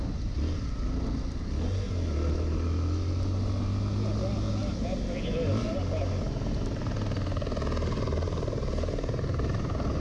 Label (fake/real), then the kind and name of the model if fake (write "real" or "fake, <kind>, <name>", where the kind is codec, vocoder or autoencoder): real